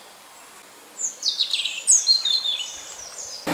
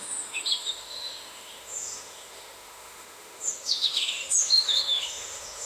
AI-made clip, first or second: second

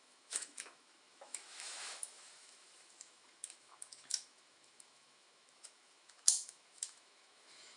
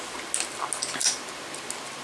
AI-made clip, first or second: first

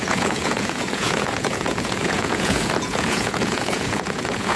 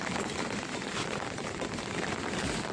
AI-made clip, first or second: first